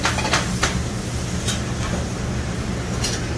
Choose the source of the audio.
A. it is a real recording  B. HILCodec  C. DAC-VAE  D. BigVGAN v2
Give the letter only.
A